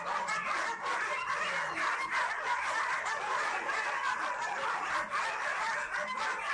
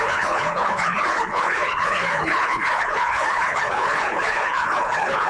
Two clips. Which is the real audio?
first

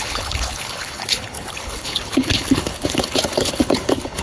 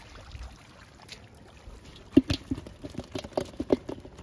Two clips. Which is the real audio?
second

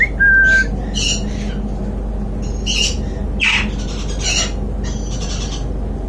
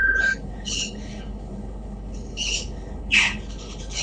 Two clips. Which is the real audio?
first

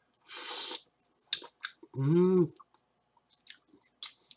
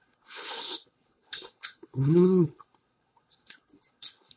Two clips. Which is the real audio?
first